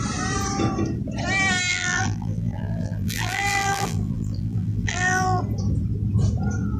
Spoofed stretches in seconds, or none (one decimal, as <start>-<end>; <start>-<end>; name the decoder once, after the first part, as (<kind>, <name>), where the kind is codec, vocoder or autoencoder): 1.7-5.4 (vocoder, BigVGAN v2)